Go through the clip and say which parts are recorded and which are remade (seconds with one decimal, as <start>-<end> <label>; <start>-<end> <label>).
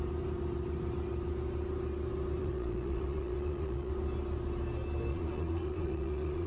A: 0.0-2.4 recorded; 2.4-3.9 remade; 3.9-5.1 recorded; 5.1-6.5 remade